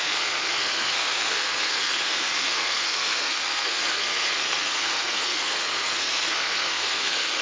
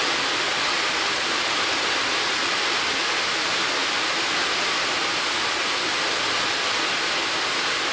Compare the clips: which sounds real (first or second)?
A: second